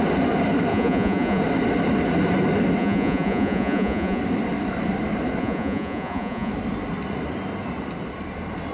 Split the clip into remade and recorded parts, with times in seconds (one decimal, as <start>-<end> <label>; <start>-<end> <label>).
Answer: 0.0-0.7 recorded; 0.7-1.4 remade; 1.4-2.8 recorded; 2.8-4.2 remade; 4.2-5.4 recorded; 5.4-6.5 remade; 6.5-8.7 recorded